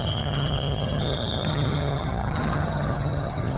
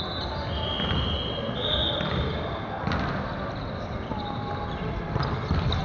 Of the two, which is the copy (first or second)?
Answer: first